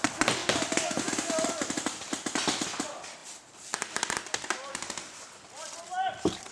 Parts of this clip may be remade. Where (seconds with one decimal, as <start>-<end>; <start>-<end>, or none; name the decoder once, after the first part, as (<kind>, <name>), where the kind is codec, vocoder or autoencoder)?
none